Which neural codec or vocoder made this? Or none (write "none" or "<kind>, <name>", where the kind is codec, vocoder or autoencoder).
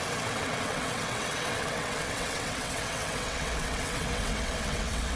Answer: vocoder, WaveNeXt